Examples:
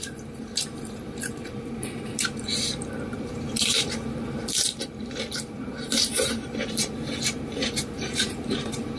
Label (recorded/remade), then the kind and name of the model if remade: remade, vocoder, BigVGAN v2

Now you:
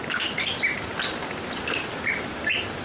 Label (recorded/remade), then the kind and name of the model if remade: recorded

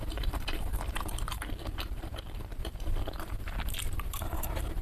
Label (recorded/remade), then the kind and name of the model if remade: remade, vocoder, BigVGAN v2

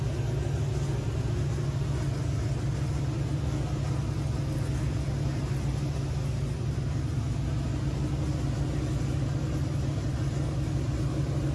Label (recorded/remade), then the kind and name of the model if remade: recorded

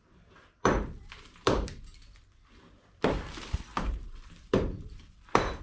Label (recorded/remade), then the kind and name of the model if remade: remade, vocoder, BigVGAN v2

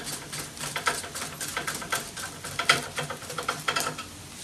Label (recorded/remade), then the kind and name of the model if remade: remade, vocoder, BigVGAN v2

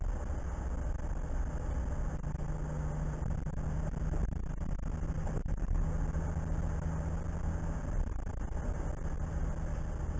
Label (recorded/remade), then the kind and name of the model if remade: recorded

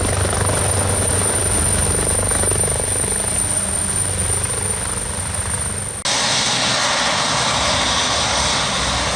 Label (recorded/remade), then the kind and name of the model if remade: recorded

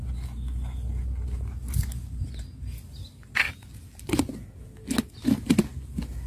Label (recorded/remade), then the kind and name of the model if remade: recorded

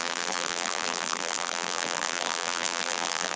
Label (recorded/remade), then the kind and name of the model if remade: remade, vocoder, BigVGAN v2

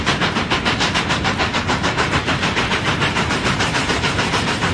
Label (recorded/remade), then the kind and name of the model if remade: remade, vocoder, BigVGAN v2